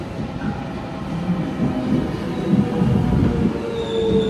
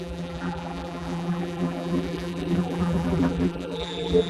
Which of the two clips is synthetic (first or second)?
second